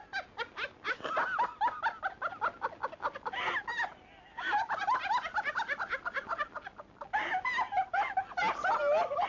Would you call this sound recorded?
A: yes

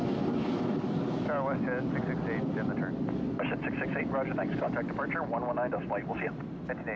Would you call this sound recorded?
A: yes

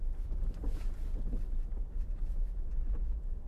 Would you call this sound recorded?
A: yes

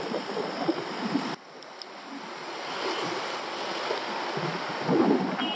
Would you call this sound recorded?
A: yes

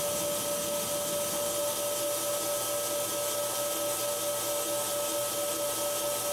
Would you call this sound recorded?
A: yes